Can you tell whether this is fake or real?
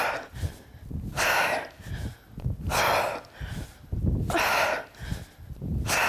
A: real